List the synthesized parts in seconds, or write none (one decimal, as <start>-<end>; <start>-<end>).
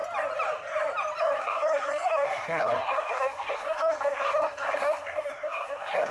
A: 1.4-6.1